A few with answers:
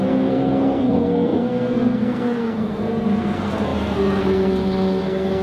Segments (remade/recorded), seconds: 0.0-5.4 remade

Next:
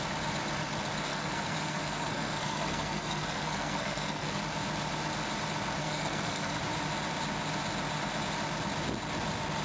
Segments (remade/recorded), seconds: 0.0-1.1 recorded; 1.1-4.4 remade; 4.4-5.8 recorded; 5.8-6.6 remade; 6.6-9.6 recorded

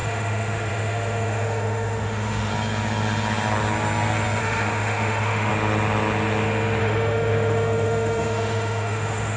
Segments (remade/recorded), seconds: 0.0-2.5 remade; 2.5-4.4 recorded; 4.4-5.5 remade; 5.5-6.8 recorded; 6.8-9.4 remade

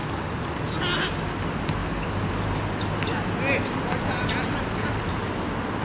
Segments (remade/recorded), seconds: 0.0-5.8 recorded